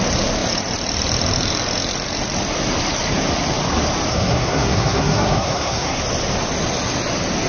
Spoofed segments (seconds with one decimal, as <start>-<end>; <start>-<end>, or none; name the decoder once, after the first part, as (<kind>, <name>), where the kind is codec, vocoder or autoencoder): 4.1-6.0 (codec, SNAC)